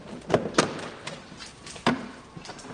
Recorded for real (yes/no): no